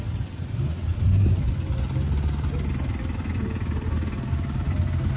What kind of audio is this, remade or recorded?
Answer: recorded